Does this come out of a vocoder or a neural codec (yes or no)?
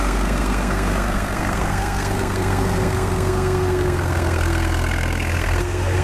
yes